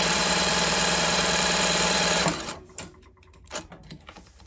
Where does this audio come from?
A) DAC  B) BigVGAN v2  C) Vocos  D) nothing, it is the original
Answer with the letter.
B